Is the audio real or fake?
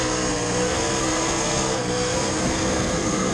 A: fake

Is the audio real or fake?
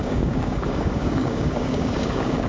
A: fake